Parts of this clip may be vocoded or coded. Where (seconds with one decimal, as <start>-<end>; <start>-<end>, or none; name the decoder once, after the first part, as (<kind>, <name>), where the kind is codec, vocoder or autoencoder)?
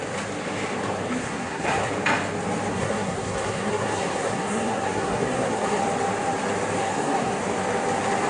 1.2-1.9 (codec, SNAC); 2.7-5.8; 6.8-7.4